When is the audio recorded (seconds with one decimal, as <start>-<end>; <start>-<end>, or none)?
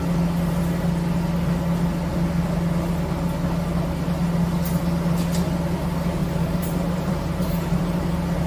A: 0.0-6.2; 8.0-8.5